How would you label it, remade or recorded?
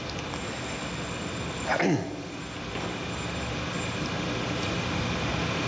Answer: recorded